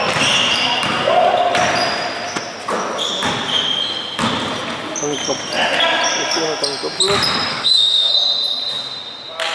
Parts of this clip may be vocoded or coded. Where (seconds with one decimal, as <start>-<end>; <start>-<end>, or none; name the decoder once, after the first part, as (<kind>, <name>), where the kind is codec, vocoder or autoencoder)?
7.5-8.1 (autoencoder, DAC-VAE)